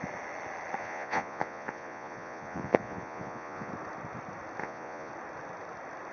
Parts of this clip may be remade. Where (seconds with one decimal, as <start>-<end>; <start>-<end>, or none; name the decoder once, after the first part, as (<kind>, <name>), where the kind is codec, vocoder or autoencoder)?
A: 0.8-3.7 (vocoder, Vocos); 4.6-5.1